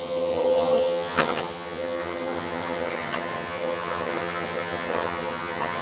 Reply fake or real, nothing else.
fake